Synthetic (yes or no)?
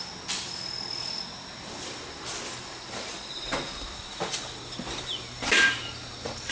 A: no